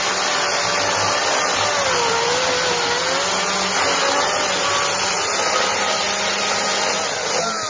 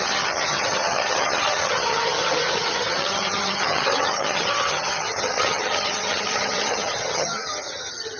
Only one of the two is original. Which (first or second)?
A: first